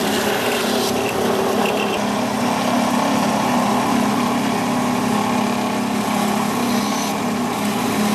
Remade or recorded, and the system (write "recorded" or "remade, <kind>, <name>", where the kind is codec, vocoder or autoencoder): recorded